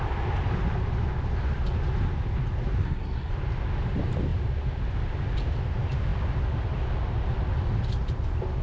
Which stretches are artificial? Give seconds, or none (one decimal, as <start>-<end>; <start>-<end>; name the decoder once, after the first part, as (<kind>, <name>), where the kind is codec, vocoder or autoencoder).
2.8-3.3 (codec, SNAC)